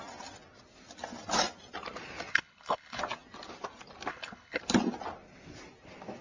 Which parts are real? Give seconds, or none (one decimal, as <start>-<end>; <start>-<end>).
0.0-2.3; 3.0-4.1; 4.6-6.2